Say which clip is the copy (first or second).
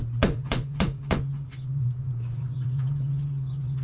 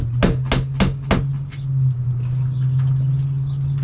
first